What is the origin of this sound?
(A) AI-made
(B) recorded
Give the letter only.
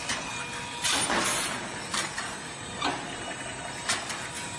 A